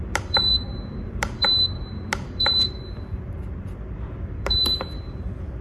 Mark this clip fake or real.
fake